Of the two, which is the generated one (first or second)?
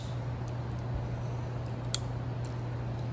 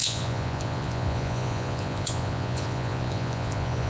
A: second